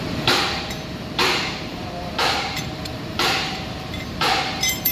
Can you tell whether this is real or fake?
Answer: fake